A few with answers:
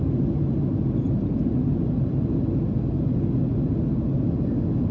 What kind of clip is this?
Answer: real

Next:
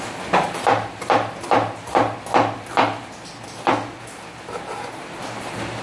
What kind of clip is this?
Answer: real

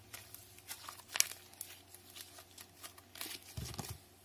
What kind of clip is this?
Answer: real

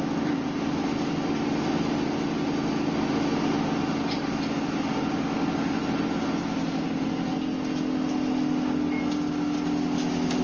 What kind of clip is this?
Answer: real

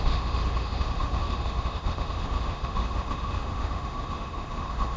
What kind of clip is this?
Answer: fake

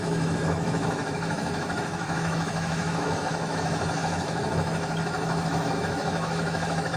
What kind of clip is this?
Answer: fake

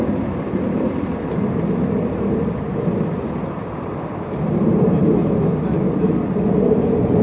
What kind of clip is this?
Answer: real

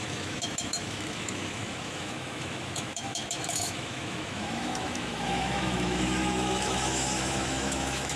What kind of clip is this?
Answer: fake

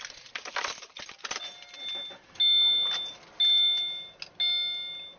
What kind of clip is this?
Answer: real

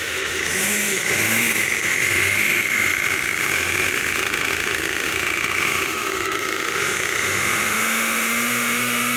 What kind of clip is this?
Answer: fake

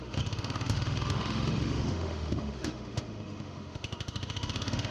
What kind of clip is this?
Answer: fake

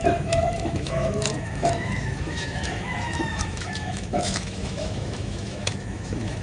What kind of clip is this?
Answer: fake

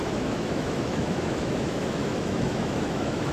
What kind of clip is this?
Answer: fake